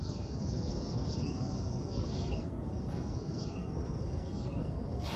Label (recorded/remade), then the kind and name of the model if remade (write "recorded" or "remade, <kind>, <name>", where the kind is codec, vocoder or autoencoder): remade, codec, SNAC